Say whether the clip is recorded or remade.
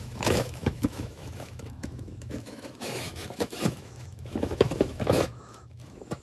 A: remade